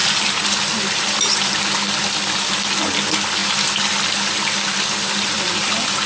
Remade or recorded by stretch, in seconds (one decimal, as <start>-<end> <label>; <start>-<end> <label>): 0.0-6.1 recorded